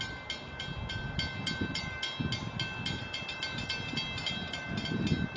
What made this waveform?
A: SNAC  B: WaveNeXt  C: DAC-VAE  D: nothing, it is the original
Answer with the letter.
D